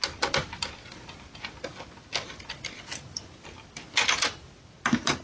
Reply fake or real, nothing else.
real